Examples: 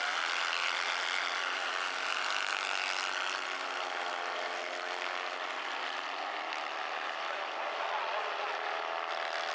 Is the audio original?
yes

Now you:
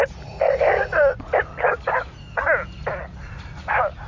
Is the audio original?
yes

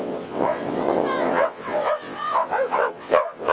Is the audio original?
no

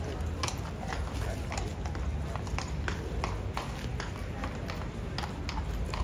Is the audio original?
yes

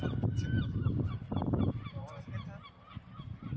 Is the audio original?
yes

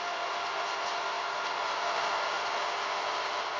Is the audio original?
yes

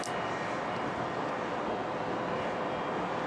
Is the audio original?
yes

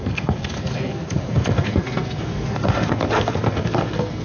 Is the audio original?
no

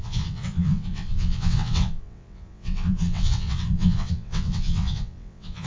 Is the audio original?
no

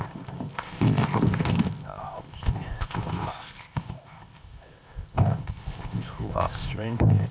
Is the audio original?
no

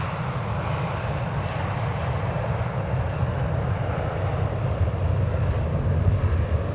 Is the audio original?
yes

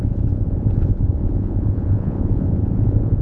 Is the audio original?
no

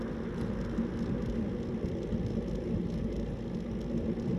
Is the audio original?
yes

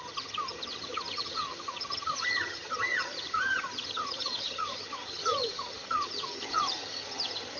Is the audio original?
no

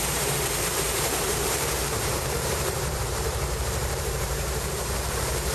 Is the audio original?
no